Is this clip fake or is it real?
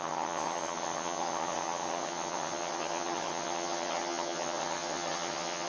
fake